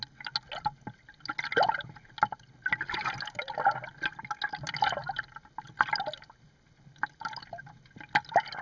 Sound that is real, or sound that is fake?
real